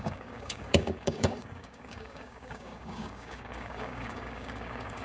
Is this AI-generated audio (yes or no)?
yes